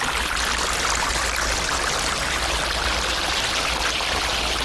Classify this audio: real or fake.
real